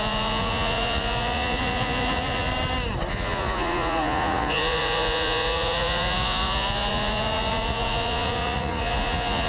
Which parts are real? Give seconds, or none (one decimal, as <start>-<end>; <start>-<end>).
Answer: 2.5-3.1